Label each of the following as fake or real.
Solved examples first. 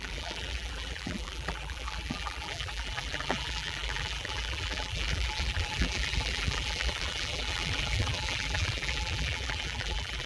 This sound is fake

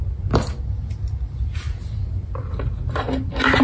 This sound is real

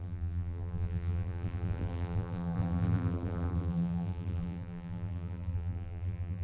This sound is fake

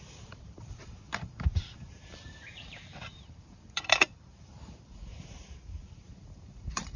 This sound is fake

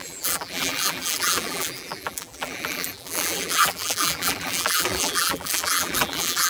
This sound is fake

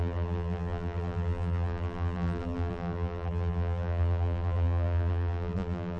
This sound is fake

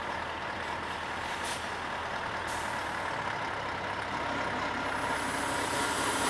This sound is real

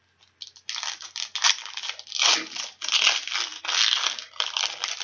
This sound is real